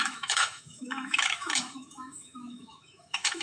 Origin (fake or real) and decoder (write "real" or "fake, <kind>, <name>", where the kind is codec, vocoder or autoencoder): fake, autoencoder, DAC-VAE